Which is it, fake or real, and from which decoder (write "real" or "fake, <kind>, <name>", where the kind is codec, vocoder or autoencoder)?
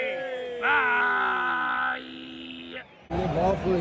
real